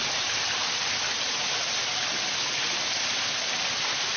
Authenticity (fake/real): real